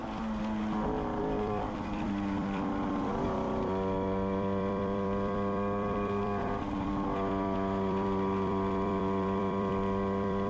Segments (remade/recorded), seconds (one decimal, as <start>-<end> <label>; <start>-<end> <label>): 0.0-1.2 recorded; 1.2-10.5 remade